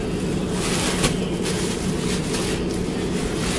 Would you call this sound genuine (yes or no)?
yes